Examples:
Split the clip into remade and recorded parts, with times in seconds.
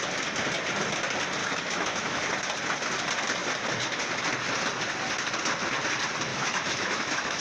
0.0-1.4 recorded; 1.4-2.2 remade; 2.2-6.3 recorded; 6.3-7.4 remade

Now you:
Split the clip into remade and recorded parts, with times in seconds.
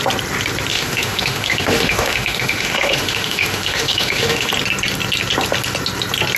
0.0-0.7 recorded; 0.7-4.5 remade; 4.5-6.4 recorded